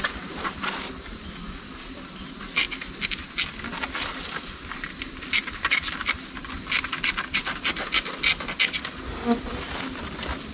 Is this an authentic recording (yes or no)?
yes